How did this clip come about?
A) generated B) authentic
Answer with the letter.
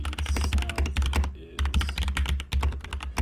B